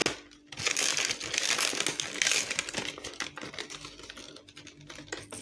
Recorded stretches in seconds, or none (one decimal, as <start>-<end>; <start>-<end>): 0.0-5.4